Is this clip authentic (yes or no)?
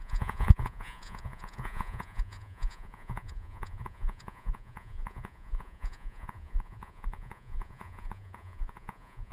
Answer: no